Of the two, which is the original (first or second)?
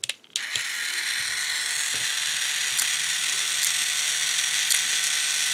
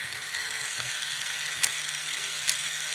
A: first